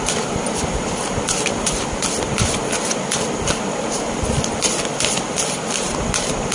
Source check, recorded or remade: recorded